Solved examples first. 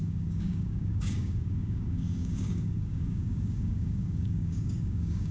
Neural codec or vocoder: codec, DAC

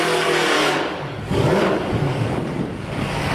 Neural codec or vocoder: codec, DAC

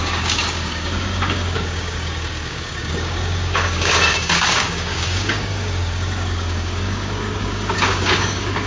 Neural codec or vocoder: codec, DAC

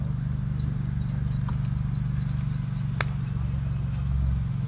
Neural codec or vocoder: none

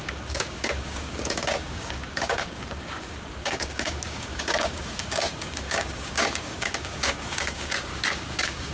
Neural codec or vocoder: codec, DAC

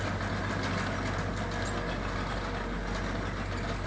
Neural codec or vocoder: none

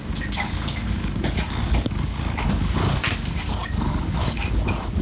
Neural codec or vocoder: codec, DAC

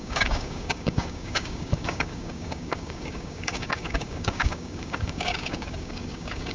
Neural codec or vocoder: codec, DAC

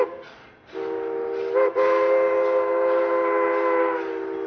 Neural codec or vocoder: none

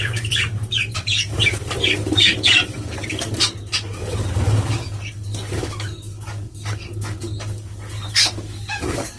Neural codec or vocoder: codec, DAC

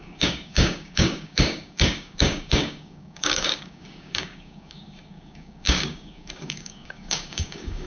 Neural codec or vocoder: codec, DAC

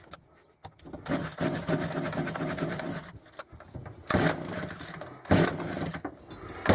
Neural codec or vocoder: none